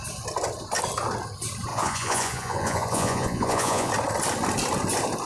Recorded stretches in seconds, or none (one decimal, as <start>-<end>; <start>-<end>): 0.0-1.7; 3.9-5.3